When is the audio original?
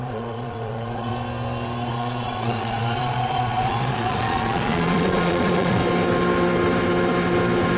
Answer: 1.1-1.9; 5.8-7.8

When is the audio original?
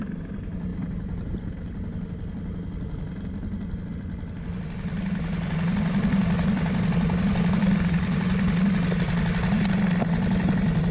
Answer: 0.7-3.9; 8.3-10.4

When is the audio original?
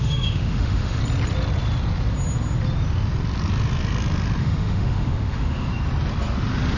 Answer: 1.0-4.4; 5.7-6.8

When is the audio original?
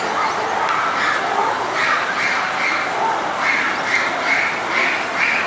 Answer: 0.0-5.5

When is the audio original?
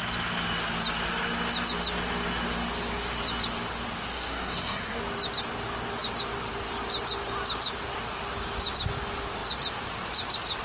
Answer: 0.0-4.1; 5.0-10.6